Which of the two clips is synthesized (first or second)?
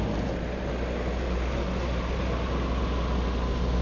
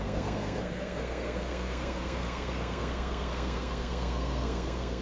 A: second